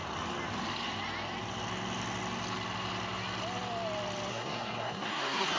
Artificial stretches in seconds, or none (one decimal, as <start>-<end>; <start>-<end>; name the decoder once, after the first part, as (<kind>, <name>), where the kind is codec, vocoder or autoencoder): 4.3-5.6 (codec, SNAC)

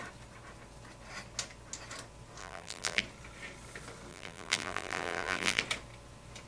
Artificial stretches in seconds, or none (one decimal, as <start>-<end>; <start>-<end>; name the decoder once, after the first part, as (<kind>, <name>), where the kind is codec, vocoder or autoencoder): 2.4-3.0 (vocoder, BigVGAN v2); 4.1-5.6

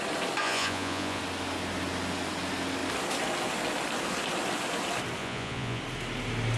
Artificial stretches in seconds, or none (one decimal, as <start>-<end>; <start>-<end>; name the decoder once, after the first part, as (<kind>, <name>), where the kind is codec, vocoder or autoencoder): 0.4-1.2 (vocoder, Vocos); 5.2-5.8

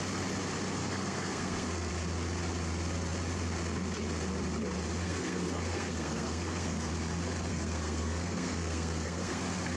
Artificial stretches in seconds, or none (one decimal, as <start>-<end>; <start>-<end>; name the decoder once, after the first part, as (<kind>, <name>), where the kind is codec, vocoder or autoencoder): 0.8-1.9 (codec, SNAC); 5.0-6.9; 7.5-9.4